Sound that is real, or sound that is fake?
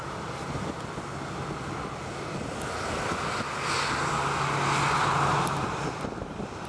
real